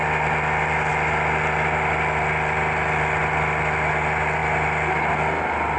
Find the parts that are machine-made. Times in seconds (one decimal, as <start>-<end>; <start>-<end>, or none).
none